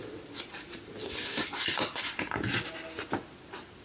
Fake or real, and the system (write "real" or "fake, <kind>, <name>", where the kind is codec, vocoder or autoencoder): real